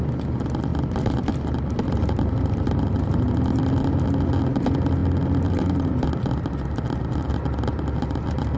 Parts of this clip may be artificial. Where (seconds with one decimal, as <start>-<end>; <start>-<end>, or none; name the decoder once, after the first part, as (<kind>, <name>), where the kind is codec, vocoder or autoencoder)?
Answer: 0.7-3.4 (vocoder, BigVGAN v2); 5.0-7.3